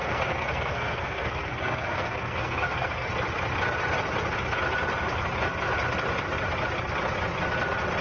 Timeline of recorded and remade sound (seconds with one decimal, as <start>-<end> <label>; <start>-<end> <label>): 0.0-3.1 remade; 3.1-8.0 recorded